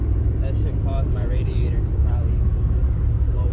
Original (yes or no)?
no